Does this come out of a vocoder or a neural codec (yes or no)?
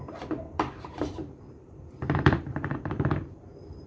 yes